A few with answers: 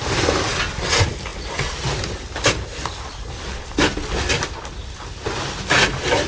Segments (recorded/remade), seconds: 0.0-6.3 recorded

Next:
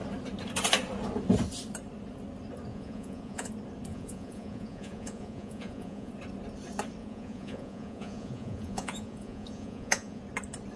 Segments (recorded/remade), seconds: 0.0-2.7 recorded; 2.7-3.5 remade; 3.5-3.9 recorded; 3.9-6.1 remade; 6.1-7.0 recorded; 7.0-10.2 remade; 10.2-10.8 recorded

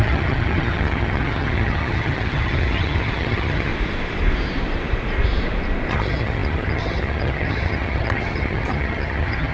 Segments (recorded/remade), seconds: 0.0-3.7 remade; 3.7-5.9 recorded; 5.9-9.5 remade

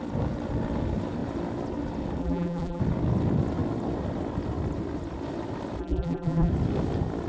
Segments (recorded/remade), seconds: 0.0-2.2 recorded; 2.2-2.8 remade; 2.8-5.8 recorded; 5.8-6.5 remade; 6.5-7.3 recorded